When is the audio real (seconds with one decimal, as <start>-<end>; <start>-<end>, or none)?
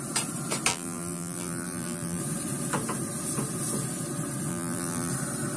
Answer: 0.0-0.7; 2.2-4.5; 5.1-5.6